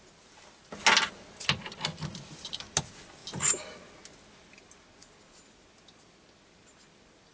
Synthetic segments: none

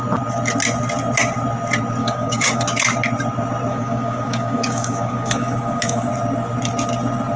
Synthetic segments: 2.0-2.6 (codec, DAC); 3.7-6.1

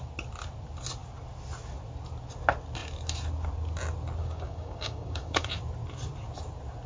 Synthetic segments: 4.2-5.5 (codec, DAC)

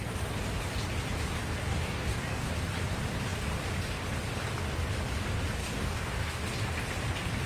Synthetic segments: 1.7-2.5 (codec, DAC); 5.6-6.4